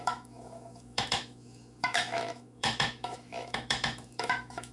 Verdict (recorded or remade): remade